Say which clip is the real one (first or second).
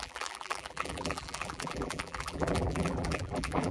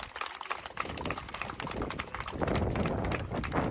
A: second